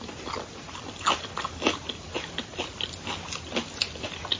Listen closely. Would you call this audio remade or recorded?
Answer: recorded